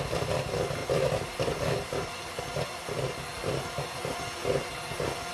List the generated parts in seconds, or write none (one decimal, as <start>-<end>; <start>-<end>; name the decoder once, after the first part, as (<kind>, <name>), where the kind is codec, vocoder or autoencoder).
none